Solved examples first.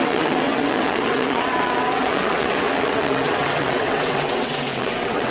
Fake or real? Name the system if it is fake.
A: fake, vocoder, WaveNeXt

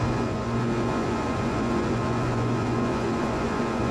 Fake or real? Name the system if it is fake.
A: fake, vocoder, Vocos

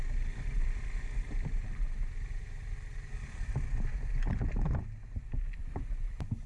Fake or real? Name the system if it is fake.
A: real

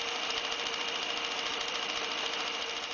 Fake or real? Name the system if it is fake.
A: real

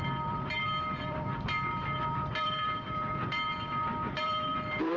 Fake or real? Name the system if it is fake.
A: fake, vocoder, BigVGAN v2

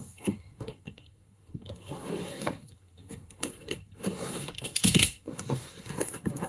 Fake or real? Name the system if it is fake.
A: fake, codec, SNAC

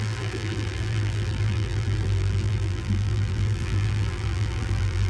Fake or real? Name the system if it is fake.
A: fake, vocoder, BigVGAN v2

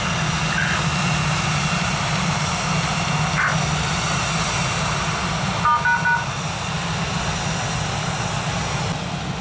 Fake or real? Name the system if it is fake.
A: real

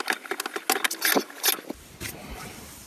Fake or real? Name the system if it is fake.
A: real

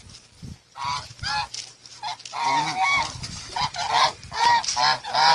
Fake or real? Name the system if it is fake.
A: real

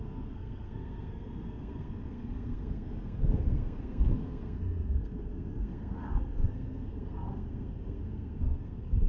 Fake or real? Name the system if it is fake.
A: fake, codec, SNAC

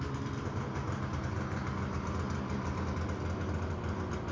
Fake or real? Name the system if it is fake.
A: real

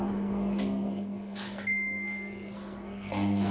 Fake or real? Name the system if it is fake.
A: fake, codec, SNAC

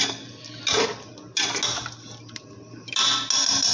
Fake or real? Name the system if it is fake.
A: real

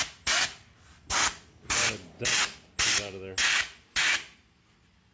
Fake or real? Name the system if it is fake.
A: real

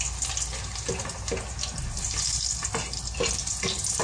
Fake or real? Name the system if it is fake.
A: real